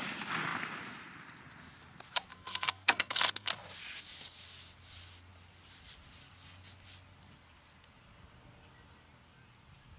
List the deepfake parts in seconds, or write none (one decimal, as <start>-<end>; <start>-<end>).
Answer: 2.3-3.5